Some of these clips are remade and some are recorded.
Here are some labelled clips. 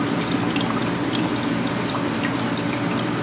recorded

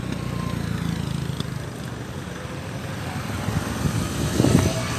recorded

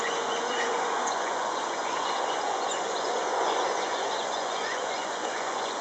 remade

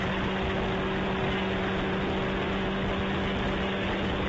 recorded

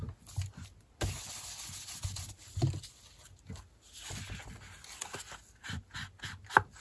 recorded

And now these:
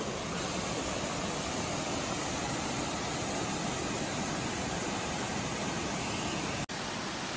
recorded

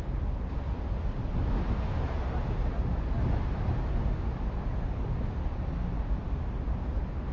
recorded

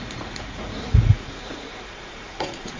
remade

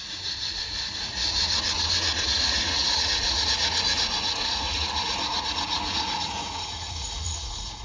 remade